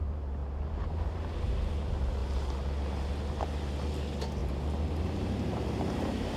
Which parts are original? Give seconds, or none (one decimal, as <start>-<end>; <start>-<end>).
0.0-4.4